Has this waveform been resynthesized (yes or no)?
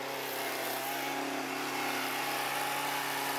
no